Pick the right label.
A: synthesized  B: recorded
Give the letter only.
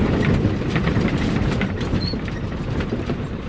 A